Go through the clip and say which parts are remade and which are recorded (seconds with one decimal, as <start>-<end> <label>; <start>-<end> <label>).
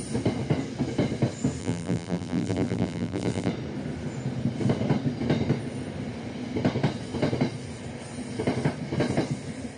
0.0-1.6 recorded; 1.6-3.5 remade; 3.5-9.8 recorded